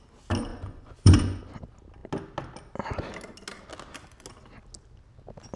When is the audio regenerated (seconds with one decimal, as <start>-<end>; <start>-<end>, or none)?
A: 0.5-1.4